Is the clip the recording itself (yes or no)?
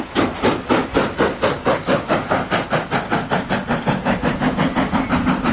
yes